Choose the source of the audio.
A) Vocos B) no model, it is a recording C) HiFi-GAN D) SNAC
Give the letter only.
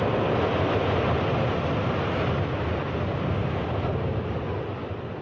B